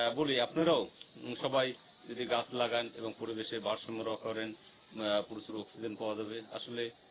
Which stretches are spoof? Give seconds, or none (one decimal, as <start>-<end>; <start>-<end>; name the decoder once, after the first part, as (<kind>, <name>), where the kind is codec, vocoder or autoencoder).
none